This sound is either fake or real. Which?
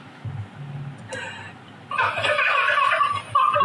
real